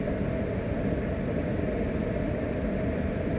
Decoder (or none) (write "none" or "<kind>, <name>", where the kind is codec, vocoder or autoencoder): none